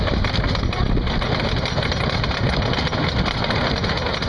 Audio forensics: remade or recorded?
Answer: recorded